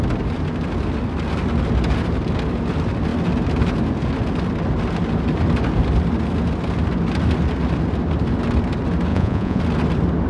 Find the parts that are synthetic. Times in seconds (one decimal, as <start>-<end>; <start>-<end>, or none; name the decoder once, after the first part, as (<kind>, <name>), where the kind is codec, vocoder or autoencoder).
9.1-9.6 (vocoder, Vocos)